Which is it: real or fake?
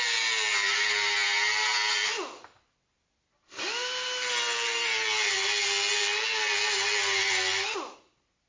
real